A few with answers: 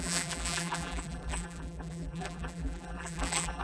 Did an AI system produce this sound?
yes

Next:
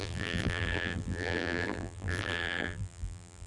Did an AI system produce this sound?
yes